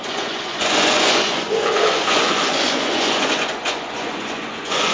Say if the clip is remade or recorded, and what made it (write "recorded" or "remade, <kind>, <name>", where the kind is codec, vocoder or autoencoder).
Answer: remade, vocoder, Vocos